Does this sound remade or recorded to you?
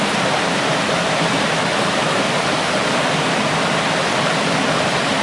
recorded